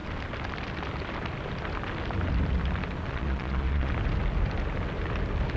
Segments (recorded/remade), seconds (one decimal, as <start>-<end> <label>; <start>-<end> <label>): 0.0-3.1 recorded; 3.1-3.9 remade; 3.9-5.6 recorded